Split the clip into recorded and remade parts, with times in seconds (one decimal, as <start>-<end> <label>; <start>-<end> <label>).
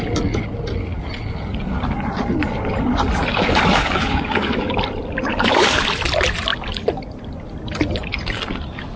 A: 0.0-3.3 recorded; 3.3-4.7 remade; 4.7-5.3 recorded; 5.3-5.8 remade; 5.8-9.0 recorded